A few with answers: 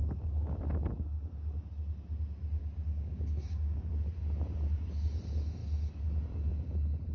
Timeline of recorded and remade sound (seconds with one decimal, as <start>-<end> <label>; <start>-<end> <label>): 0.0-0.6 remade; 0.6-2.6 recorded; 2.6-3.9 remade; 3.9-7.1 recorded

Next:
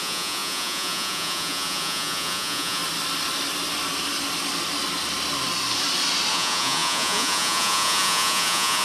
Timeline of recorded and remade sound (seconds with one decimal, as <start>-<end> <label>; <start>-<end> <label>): 0.0-2.8 remade; 2.8-6.3 recorded; 6.3-8.8 remade

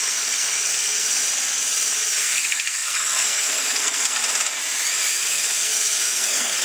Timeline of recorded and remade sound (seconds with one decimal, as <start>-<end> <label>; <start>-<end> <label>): 0.0-1.2 remade; 1.2-2.2 recorded; 2.2-4.2 remade; 4.2-5.1 recorded; 5.1-6.6 remade

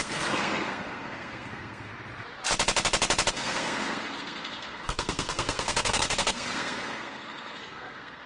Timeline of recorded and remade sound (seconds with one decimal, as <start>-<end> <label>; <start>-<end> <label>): 0.0-1.9 remade; 1.9-3.3 recorded; 3.3-8.3 remade

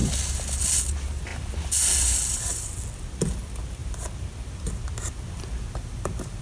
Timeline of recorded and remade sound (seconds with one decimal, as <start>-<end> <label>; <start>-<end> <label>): 0.0-6.4 recorded

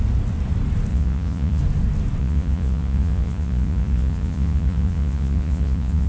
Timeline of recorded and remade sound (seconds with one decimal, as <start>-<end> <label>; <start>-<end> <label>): 0.0-0.9 recorded; 0.9-1.6 remade; 1.6-2.2 recorded; 2.2-6.1 remade

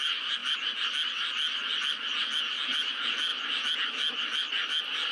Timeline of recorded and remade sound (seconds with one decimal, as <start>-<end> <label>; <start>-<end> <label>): 0.0-5.1 recorded

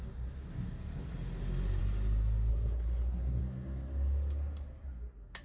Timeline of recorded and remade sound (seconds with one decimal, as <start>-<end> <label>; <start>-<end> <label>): 0.0-2.5 recorded; 2.5-3.4 remade; 3.4-5.4 recorded